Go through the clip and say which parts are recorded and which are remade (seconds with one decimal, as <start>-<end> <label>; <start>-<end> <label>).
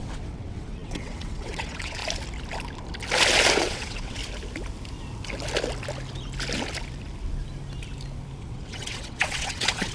0.0-2.0 remade; 2.0-3.5 recorded; 3.5-4.2 remade; 4.2-8.4 recorded; 8.4-9.9 remade